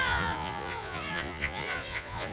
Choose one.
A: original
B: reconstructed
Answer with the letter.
B